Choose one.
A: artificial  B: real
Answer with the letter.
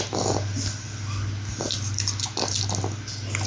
B